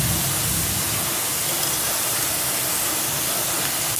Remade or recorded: recorded